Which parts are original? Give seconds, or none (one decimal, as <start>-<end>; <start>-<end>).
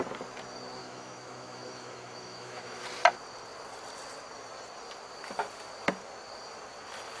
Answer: 0.0-0.8; 2.8-7.2